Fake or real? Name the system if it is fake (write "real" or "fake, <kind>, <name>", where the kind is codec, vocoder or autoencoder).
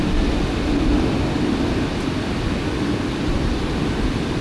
real